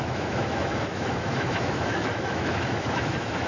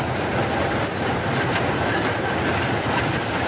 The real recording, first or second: second